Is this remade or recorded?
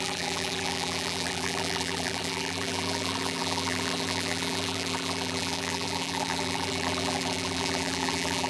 remade